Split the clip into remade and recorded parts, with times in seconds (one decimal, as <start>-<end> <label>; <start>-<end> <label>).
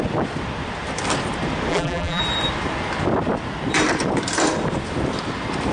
0.0-1.7 recorded; 1.7-2.2 remade; 2.2-5.7 recorded